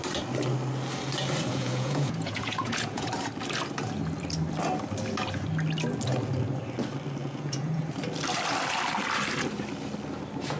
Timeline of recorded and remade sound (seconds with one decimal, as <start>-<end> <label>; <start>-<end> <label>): 0.0-1.5 recorded; 1.5-3.1 remade; 3.1-7.2 recorded; 7.2-7.8 remade; 7.8-10.6 recorded